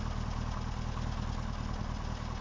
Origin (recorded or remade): recorded